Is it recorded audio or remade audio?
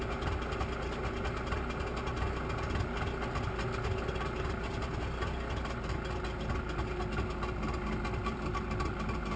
recorded